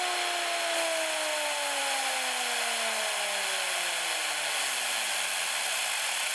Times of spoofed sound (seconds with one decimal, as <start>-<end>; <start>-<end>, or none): none